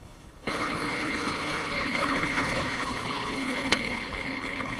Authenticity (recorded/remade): remade